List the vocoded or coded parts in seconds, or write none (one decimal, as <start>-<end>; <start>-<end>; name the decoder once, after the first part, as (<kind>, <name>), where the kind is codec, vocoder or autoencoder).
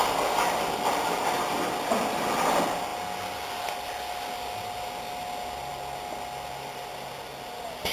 none